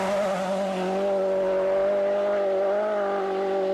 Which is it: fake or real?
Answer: real